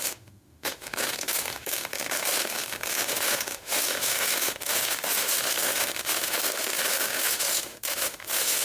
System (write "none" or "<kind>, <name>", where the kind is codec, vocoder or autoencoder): autoencoder, DAC-VAE